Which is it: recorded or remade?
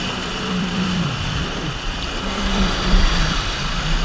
remade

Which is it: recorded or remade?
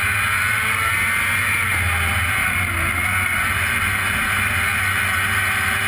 recorded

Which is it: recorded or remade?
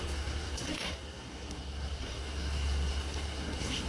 remade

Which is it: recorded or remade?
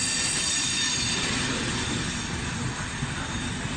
recorded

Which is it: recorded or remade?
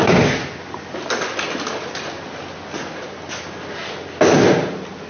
recorded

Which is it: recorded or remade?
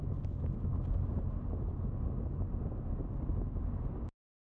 recorded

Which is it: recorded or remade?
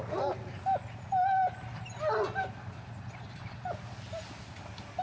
recorded